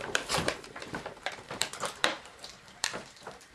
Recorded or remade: remade